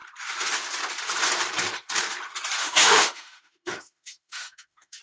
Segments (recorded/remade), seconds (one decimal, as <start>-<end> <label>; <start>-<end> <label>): 0.0-2.6 recorded; 2.6-5.0 remade